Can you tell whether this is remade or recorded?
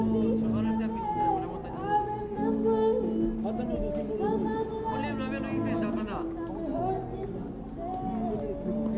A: recorded